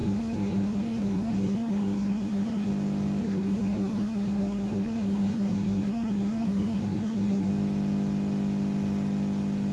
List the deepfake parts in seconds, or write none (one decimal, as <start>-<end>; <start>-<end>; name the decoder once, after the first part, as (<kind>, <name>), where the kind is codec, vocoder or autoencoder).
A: 0.0-2.7 (codec, SNAC); 3.2-7.5